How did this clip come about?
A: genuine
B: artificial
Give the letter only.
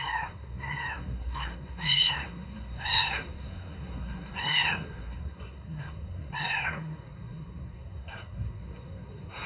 B